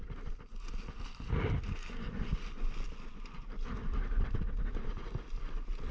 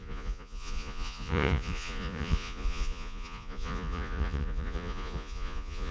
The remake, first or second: second